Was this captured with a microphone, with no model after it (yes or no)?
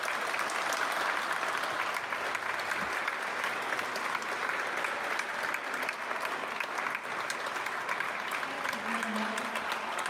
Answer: yes